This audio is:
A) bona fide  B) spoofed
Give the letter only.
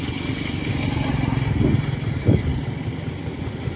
A